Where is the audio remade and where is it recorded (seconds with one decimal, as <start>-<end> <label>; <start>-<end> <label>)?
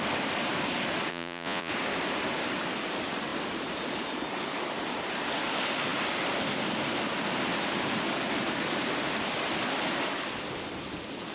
0.0-1.1 recorded; 1.1-1.7 remade; 1.7-11.3 recorded